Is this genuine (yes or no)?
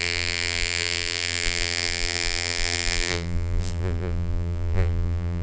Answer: no